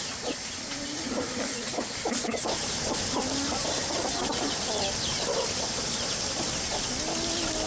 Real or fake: real